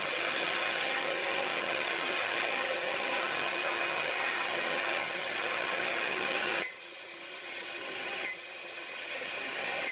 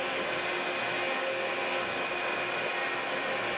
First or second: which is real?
second